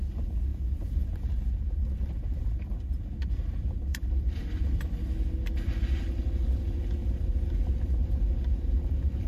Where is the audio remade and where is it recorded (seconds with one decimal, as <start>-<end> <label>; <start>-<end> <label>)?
0.0-3.9 recorded; 3.9-5.1 remade; 5.1-9.3 recorded